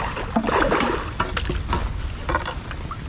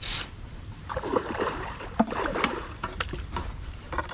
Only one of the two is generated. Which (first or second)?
second